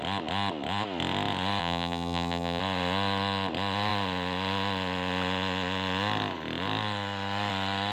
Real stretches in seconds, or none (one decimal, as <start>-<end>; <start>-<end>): 0.0-1.6; 2.6-7.9